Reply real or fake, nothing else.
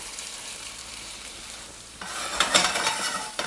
fake